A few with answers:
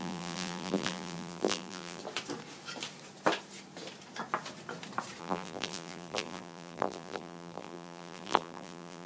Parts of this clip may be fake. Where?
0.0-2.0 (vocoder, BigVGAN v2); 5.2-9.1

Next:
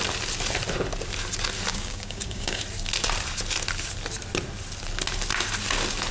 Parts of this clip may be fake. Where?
1.7-2.6 (codec, DAC)

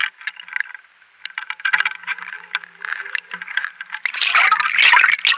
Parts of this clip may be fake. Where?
2.1-4.6 (vocoder, BigVGAN v2)

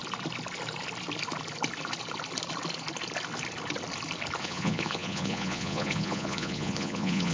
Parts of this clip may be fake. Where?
4.4-7.3 (vocoder, Vocos)

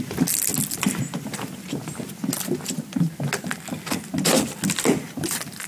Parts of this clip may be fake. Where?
none

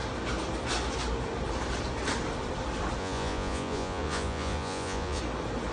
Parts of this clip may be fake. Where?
3.0-5.2 (vocoder, Vocos)